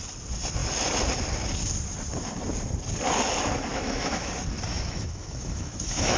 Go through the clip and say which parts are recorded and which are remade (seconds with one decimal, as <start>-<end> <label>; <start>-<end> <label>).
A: 0.0-3.7 recorded; 3.7-4.3 remade; 4.3-4.7 recorded; 4.7-6.2 remade